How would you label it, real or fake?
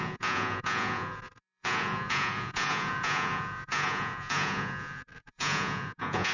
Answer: fake